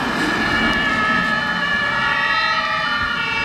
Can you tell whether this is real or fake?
real